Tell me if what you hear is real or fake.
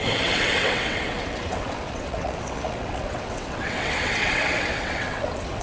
fake